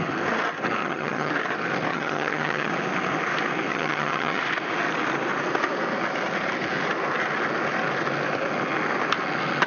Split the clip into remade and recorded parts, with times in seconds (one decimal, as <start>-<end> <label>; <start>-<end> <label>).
0.0-0.8 recorded; 0.8-1.3 remade; 1.3-1.9 recorded; 1.9-2.7 remade; 2.7-3.7 recorded; 3.7-4.4 remade; 4.4-9.7 recorded